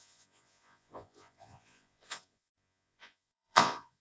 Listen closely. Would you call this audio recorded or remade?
remade